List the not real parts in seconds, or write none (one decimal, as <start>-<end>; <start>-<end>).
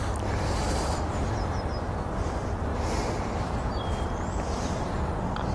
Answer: 1.2-5.5